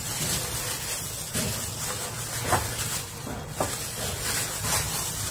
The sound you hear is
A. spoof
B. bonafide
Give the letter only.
B